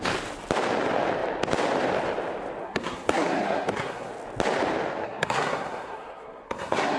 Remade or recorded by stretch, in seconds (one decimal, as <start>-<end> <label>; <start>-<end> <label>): 0.0-2.6 recorded; 2.6-4.1 remade; 4.1-5.0 recorded; 5.0-7.0 remade